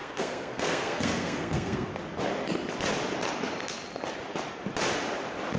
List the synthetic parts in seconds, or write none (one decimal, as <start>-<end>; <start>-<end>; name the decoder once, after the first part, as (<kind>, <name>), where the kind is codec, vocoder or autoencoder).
0.0-1.9 (codec, SNAC)

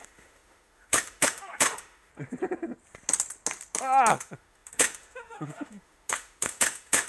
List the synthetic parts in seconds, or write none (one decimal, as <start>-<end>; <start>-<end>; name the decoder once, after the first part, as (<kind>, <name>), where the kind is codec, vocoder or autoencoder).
0.0-2.1 (autoencoder, DAC-VAE); 4.1-7.1

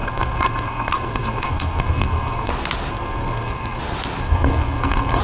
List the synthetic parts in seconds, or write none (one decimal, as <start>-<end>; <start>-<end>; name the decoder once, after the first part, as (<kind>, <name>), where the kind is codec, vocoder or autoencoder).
0.0-2.5 (codec, SNAC); 2.9-3.8; 4.2-5.2

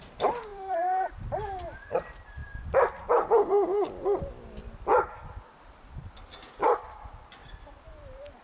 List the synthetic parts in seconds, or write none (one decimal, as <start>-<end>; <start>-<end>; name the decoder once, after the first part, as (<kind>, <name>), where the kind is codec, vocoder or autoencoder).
0.5-1.4 (vocoder, BigVGAN v2); 7.4-8.4